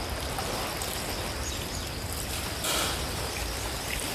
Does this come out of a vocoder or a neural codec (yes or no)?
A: no